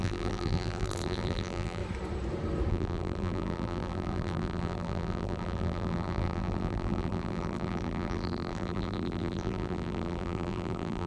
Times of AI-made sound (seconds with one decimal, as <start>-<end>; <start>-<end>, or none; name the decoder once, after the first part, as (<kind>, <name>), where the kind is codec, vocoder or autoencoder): 0.0-1.8 (vocoder, BigVGAN v2); 2.7-11.1